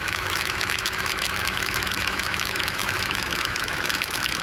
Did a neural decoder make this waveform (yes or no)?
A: yes